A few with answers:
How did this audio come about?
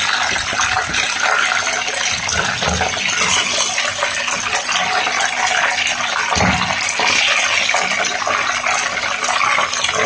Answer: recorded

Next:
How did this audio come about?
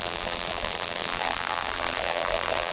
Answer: remade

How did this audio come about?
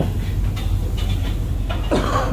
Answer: recorded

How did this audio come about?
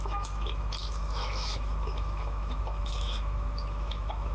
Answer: remade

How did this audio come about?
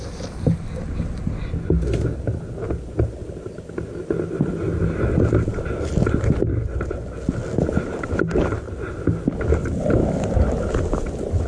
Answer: recorded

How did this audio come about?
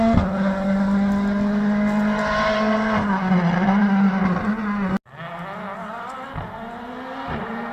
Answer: recorded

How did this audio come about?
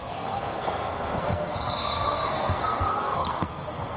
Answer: remade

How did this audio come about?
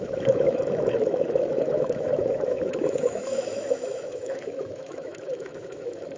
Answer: remade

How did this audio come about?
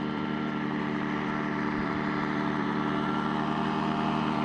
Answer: remade